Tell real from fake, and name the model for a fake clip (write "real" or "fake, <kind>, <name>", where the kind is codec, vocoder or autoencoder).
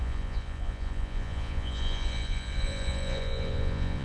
fake, vocoder, Vocos